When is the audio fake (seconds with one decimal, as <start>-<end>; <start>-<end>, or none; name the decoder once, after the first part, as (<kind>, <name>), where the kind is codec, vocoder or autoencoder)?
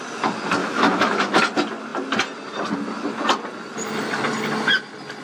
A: 0.6-1.4 (autoencoder, DAC-VAE)